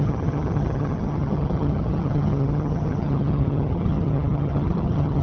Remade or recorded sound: remade